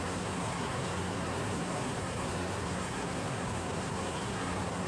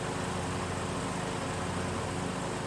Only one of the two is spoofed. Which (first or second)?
first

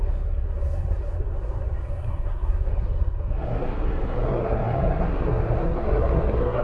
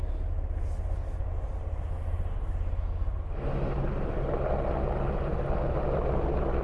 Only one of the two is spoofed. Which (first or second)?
first